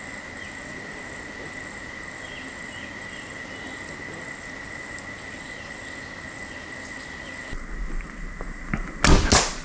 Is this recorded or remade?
recorded